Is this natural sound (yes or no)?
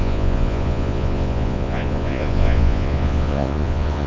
no